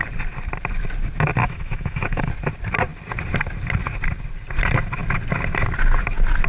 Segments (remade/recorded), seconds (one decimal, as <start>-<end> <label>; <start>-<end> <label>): 0.0-1.4 recorded; 1.4-2.3 remade; 2.3-6.5 recorded